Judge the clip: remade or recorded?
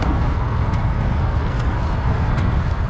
remade